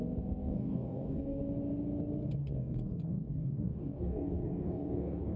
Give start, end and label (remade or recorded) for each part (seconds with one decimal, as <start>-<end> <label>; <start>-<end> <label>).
0.0-0.4 recorded; 0.4-1.4 remade; 1.4-2.4 recorded; 2.4-5.4 remade